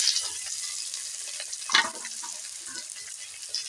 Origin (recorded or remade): recorded